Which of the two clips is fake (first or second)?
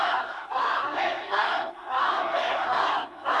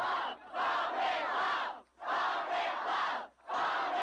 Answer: first